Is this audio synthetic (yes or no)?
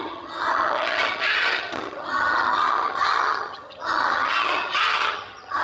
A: yes